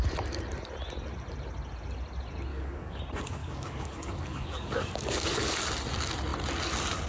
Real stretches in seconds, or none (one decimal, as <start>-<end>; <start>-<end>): 0.0-2.5; 3.0-3.4; 5.6-7.1